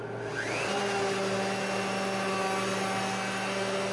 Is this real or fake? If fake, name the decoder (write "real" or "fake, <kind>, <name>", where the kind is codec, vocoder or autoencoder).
real